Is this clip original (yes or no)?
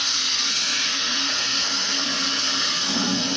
no